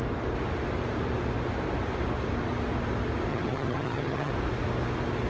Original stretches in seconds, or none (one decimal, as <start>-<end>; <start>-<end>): 0.0-3.3; 4.3-5.3